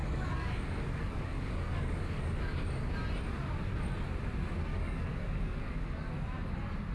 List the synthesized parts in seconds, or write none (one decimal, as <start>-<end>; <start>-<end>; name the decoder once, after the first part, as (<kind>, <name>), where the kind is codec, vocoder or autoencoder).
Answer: 0.0-2.9 (codec, DAC); 4.7-6.1